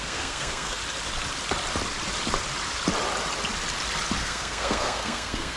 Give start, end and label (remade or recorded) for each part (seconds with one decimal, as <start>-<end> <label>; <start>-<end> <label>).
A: 0.0-0.8 remade; 0.8-4.2 recorded; 4.2-5.6 remade